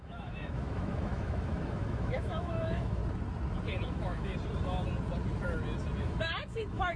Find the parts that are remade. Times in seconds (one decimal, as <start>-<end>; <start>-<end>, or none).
0.0-3.0; 3.9-4.3; 6.0-7.0